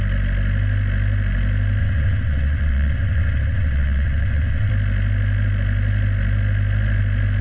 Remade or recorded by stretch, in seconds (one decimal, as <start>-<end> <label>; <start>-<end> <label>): 0.0-1.8 recorded; 1.8-4.7 remade; 4.7-7.4 recorded